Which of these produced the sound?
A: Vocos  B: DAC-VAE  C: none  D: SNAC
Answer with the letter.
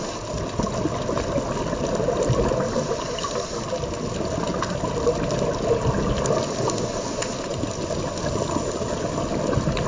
C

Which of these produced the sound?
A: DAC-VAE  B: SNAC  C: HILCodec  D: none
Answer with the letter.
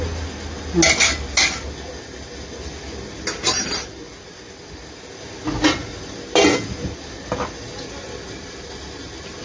D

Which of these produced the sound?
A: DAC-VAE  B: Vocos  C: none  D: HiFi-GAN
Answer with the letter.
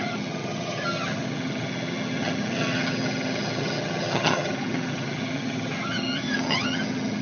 D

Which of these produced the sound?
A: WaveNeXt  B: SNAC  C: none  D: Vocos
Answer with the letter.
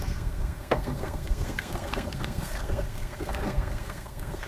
B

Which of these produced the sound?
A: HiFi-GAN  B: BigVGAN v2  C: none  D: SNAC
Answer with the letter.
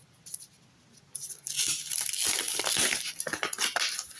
C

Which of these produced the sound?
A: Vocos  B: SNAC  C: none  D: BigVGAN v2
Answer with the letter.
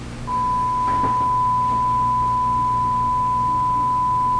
C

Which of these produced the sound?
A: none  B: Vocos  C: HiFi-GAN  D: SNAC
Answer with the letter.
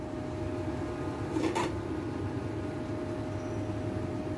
A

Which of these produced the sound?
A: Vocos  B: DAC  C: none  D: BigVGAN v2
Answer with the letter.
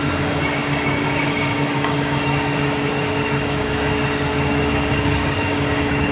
B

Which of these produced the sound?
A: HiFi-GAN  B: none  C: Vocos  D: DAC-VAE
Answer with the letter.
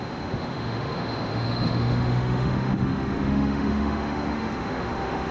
D